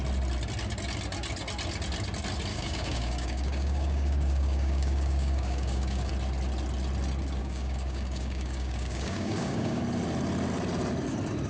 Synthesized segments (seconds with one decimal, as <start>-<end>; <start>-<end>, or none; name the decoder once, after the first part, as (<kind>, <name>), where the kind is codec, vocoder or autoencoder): 2.5-6.1 (codec, DAC); 7.4-9.8